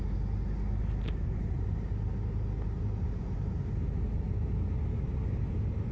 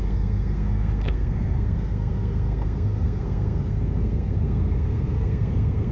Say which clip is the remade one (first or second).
second